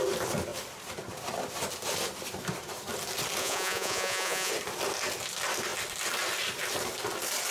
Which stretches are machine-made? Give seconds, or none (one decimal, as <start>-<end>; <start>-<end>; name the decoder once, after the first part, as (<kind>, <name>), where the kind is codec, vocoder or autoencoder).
3.4-4.5 (vocoder, Vocos)